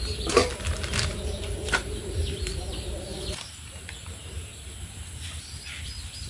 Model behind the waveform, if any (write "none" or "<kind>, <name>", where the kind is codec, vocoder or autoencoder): vocoder, BigVGAN v2